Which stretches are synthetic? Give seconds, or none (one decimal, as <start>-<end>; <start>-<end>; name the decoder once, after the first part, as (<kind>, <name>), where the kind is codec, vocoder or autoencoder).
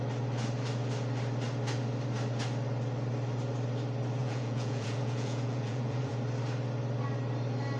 4.2-6.1 (vocoder, Vocos)